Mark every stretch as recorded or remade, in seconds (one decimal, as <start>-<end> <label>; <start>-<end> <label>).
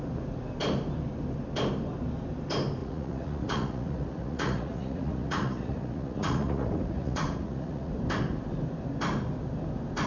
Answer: 0.0-2.8 recorded; 2.8-7.9 remade; 7.9-10.1 recorded